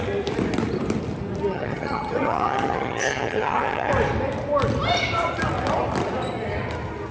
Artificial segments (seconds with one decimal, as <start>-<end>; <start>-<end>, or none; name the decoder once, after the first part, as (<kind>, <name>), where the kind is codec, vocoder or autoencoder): 1.5-3.9 (vocoder, HiFi-GAN)